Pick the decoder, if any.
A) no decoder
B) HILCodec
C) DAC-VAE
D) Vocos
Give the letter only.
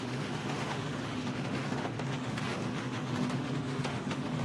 C